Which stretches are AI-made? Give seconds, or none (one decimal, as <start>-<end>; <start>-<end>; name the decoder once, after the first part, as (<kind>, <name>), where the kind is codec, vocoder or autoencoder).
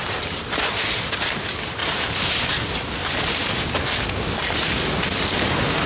0.0-1.4 (vocoder, BigVGAN v2); 1.8-2.5